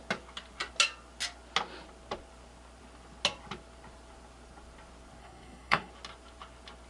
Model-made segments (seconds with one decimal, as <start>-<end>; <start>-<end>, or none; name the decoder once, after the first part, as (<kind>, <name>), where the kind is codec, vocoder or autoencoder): 5.2-5.9 (codec, SNAC)